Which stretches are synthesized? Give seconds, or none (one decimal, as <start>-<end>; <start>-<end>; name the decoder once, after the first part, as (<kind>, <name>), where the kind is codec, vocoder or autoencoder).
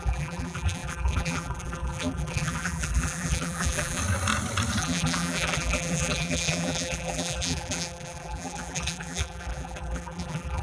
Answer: 0.0-4.0 (vocoder, BigVGAN v2); 4.8-10.6